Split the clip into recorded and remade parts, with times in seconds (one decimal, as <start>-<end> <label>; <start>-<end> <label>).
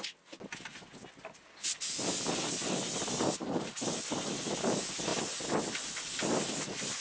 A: 0.0-7.0 recorded